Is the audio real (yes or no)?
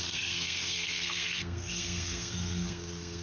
no